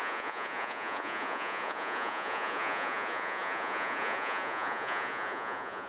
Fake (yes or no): yes